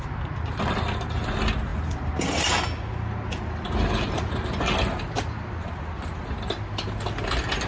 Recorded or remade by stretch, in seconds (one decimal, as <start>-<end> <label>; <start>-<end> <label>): 0.0-7.7 recorded